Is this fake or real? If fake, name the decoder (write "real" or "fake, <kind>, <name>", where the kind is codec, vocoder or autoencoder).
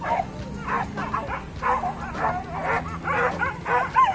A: real